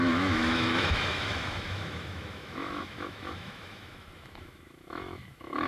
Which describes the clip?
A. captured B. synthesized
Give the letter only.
B